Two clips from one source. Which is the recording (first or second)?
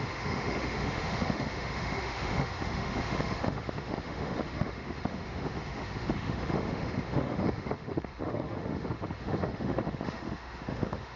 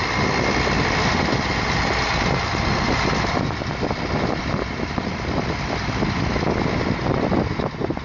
second